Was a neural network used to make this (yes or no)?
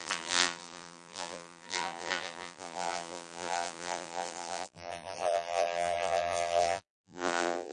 yes